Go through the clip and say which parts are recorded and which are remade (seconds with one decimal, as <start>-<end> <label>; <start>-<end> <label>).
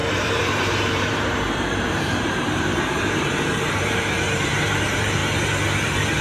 0.0-5.2 remade; 5.2-6.2 recorded